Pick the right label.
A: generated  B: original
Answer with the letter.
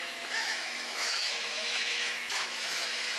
A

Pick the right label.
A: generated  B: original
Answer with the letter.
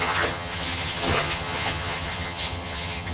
A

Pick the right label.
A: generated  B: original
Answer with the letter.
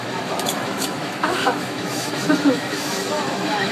A